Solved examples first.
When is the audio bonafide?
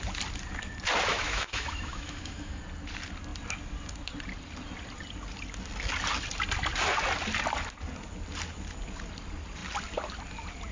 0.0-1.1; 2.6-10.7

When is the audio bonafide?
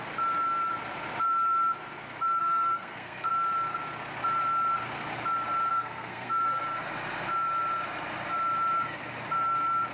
0.0-2.4; 3.3-5.7; 6.6-9.9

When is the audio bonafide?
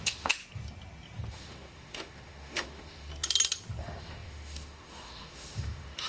0.4-1.3; 3.1-3.8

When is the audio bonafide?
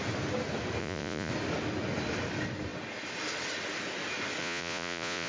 0.0-0.8; 1.3-4.4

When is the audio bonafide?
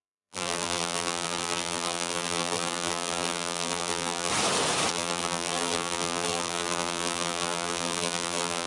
4.3-4.9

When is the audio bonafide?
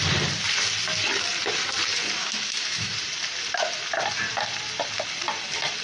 0.0-2.2; 2.9-5.8